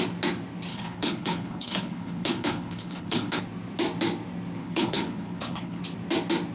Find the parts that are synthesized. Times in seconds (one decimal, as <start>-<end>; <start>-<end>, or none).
0.7-3.4; 4.6-5.8